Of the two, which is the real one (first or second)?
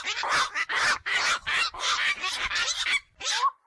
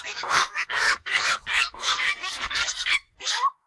first